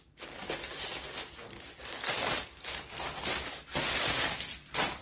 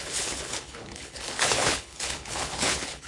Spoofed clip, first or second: second